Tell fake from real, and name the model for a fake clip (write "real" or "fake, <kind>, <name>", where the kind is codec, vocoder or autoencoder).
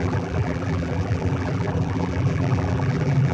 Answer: fake, vocoder, BigVGAN v2